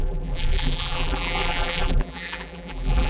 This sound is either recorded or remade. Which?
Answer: remade